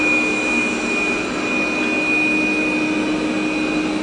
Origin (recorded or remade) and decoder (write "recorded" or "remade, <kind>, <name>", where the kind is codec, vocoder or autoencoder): recorded